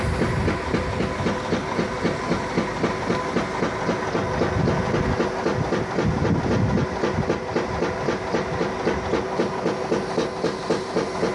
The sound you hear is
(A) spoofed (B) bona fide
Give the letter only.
B